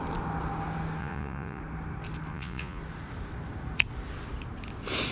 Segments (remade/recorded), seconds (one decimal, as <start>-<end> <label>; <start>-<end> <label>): 0.0-1.0 recorded; 1.0-1.6 remade; 1.6-2.3 recorded; 2.3-2.8 remade; 2.8-5.1 recorded